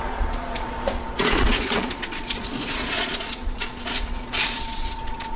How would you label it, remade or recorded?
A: remade